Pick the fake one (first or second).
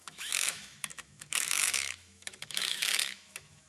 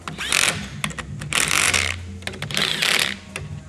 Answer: first